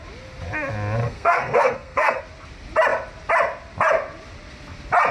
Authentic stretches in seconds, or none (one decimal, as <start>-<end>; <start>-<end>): 0.0-1.0; 2.2-5.1